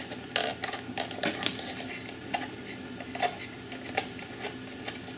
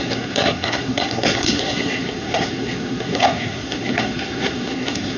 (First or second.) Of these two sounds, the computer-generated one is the second